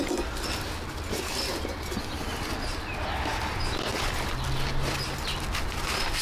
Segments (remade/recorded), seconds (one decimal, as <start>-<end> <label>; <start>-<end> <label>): 0.0-6.2 recorded